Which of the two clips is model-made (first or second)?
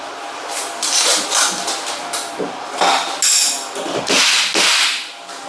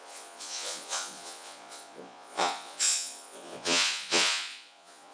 second